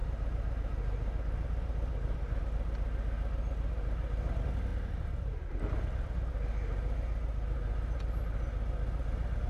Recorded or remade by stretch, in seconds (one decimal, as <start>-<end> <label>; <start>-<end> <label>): 0.0-4.7 recorded; 4.7-5.5 remade; 5.5-9.5 recorded

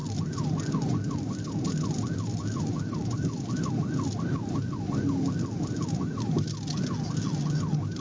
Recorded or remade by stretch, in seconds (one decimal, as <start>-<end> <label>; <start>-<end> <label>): 0.0-3.7 remade; 3.7-8.0 recorded

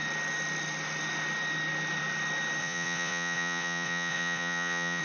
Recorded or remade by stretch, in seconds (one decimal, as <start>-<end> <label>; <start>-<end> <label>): 0.0-2.6 recorded; 2.6-5.0 remade

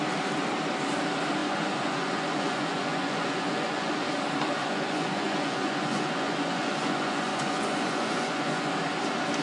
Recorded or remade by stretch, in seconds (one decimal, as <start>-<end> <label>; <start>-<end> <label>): 0.0-1.4 recorded; 1.4-3.9 remade; 3.9-4.6 recorded; 4.6-8.7 remade; 8.7-9.4 recorded

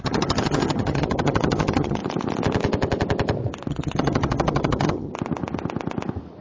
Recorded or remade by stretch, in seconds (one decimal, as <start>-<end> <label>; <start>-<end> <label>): 0.0-2.0 remade; 2.0-3.7 recorded; 3.7-5.1 remade; 5.1-6.4 recorded

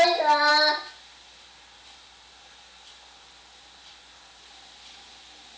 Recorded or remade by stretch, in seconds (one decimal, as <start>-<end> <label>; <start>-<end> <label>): 0.0-5.6 recorded